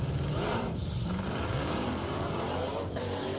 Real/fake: fake